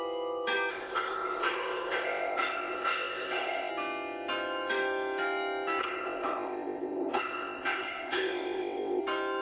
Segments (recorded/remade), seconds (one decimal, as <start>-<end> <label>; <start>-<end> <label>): 0.0-0.7 recorded; 0.7-3.7 remade; 3.7-5.8 recorded; 5.8-9.0 remade; 9.0-9.4 recorded